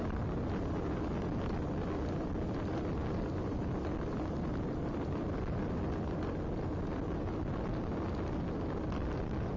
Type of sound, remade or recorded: recorded